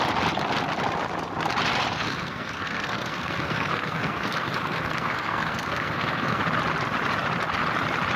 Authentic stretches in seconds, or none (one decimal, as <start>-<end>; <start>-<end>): 0.0-1.9; 6.4-8.2